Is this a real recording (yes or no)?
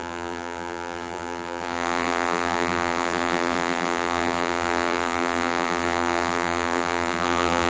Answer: no